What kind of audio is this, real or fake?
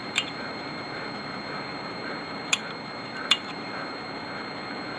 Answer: fake